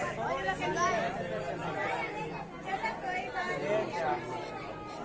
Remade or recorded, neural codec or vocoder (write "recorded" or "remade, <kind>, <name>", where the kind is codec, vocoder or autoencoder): recorded